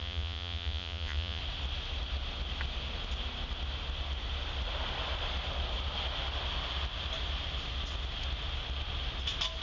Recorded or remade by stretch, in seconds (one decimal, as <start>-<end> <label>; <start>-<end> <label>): 0.0-1.4 remade; 1.4-9.6 recorded